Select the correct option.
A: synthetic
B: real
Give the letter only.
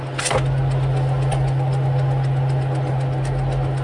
B